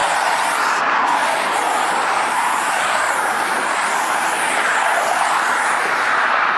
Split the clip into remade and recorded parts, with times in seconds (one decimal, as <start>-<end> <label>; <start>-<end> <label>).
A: 0.0-0.6 remade; 0.6-1.6 recorded; 1.6-5.6 remade; 5.6-6.6 recorded